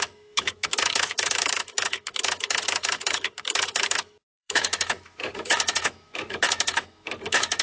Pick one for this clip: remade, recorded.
remade